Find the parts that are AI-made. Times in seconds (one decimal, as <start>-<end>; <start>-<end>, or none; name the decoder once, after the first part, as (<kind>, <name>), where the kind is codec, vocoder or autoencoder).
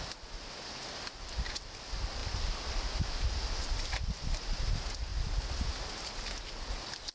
none